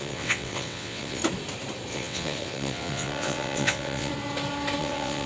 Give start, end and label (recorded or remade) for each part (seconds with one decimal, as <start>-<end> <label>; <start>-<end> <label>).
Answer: 0.0-1.2 remade; 1.2-1.9 recorded; 1.9-4.1 remade; 4.1-4.8 recorded; 4.8-5.3 remade